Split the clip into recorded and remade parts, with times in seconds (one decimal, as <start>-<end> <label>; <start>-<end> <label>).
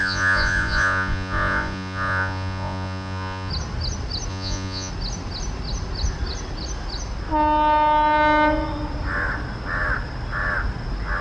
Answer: 0.0-3.5 remade; 3.5-4.3 recorded; 4.3-4.9 remade; 4.9-11.2 recorded